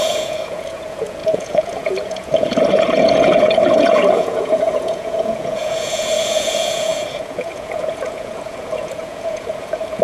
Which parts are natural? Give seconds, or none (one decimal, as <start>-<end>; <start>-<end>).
none